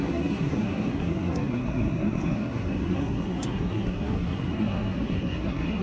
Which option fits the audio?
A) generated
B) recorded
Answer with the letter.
A